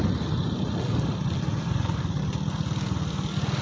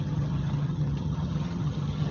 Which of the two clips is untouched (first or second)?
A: first